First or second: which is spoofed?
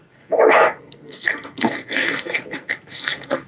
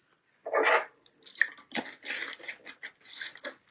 first